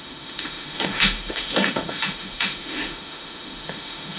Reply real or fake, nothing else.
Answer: fake